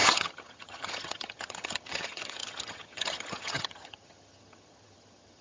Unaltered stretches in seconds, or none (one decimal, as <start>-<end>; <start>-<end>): none